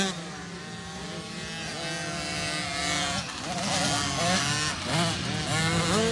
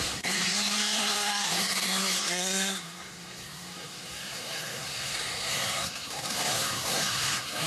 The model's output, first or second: second